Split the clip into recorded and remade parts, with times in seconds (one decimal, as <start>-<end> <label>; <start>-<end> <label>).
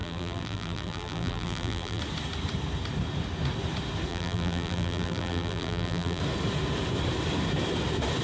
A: 0.0-2.0 remade; 2.0-4.1 recorded; 4.1-6.2 remade; 6.2-8.2 recorded